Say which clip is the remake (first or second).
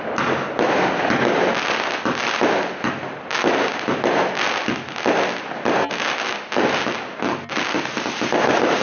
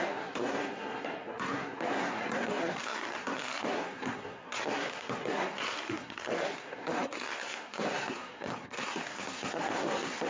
second